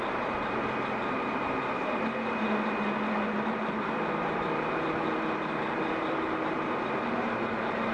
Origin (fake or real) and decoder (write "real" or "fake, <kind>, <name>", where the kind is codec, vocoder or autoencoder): fake, vocoder, BigVGAN v2